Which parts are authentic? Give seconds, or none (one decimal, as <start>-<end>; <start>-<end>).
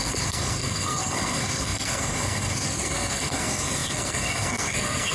none